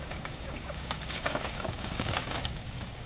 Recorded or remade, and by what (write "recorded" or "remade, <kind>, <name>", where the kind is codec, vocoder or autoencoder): remade, codec, DAC